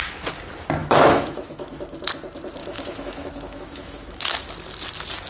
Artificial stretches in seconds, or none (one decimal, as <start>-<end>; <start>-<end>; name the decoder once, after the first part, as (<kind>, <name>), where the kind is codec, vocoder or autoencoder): 0.8-1.8 (autoencoder, DAC-VAE); 2.6-4.4

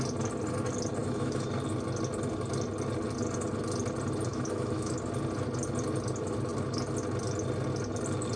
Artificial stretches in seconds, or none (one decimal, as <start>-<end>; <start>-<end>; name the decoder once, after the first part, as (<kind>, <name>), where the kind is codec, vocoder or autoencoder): 1.0-1.5 (autoencoder, DAC-VAE); 4.3-4.9

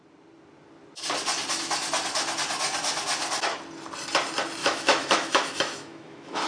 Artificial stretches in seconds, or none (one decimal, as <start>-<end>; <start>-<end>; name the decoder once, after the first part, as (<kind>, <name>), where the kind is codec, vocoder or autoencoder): 4.6-6.5 (autoencoder, DAC-VAE)

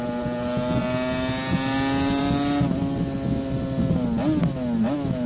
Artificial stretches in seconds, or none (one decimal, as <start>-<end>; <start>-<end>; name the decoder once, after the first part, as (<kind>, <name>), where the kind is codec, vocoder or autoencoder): none

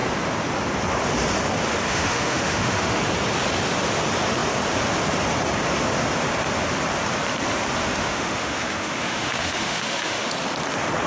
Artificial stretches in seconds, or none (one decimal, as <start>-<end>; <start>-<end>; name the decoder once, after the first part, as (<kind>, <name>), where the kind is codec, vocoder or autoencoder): 1.9-3.0 (autoencoder, DAC-VAE); 7.8-10.3

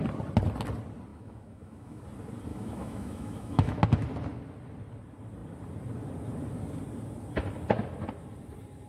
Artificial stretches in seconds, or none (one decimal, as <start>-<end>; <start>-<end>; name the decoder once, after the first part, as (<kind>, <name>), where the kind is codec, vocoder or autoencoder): 1.1-2.0 (autoencoder, DAC-VAE); 2.5-3.8

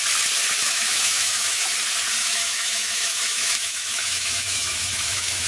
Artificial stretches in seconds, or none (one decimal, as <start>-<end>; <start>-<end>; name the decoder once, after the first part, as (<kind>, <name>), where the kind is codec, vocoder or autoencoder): 0.6-1.7 (autoencoder, DAC-VAE); 2.2-5.5

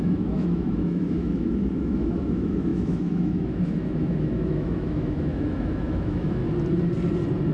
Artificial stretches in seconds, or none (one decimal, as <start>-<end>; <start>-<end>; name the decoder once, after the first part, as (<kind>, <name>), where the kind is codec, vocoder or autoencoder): 0.0-6.4 (autoencoder, DAC-VAE)